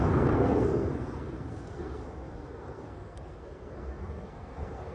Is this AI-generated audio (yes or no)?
yes